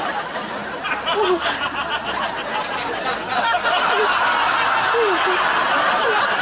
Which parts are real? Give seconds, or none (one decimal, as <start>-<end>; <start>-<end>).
2.0-5.8

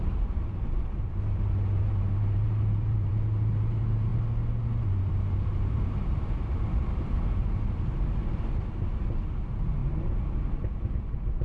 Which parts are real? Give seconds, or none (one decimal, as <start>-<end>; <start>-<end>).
4.1-5.1; 9.8-10.9